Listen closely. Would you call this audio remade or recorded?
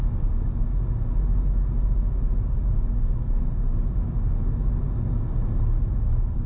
recorded